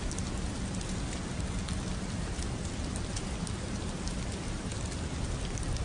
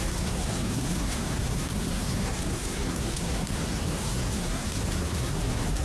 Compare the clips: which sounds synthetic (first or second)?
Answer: second